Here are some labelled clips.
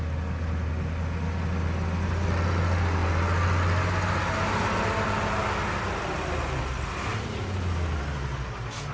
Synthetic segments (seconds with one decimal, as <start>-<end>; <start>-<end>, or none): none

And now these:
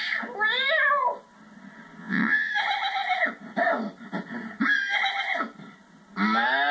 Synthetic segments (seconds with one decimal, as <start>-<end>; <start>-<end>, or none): 2.0-2.5

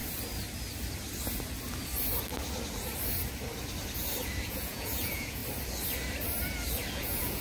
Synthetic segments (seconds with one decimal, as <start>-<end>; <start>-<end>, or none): 4.4-5.4; 6.9-7.4